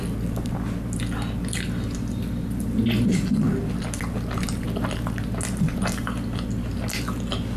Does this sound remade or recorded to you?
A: recorded